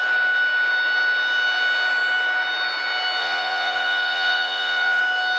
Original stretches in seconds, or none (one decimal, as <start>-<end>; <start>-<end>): 0.0-3.2; 5.0-5.4